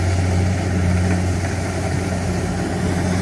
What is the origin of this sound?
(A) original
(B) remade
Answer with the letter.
A